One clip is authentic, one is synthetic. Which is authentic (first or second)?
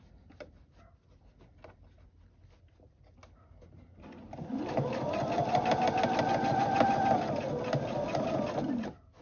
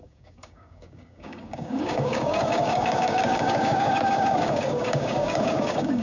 first